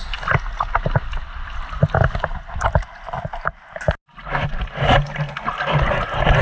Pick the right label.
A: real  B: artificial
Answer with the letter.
A